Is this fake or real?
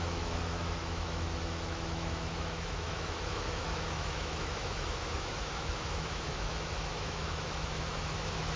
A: fake